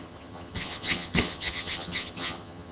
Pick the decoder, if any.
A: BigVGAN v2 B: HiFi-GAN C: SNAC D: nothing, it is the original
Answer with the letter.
B